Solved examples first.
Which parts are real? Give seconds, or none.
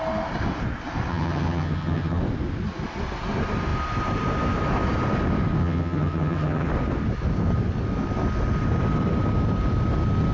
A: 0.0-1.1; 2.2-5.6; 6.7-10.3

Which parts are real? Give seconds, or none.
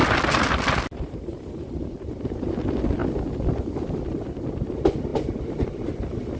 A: 0.0-6.4